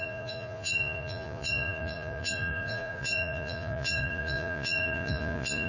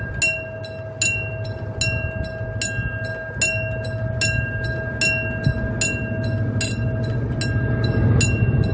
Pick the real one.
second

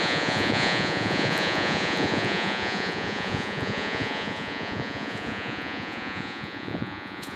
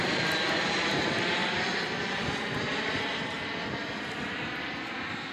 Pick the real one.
second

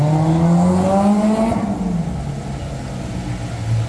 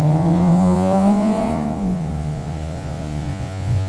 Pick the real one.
first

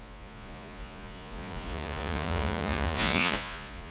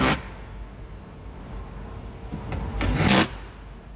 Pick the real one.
second